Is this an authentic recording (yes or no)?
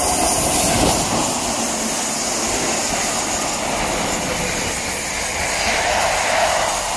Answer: yes